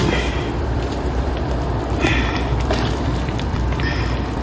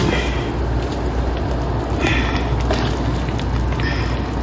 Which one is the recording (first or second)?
second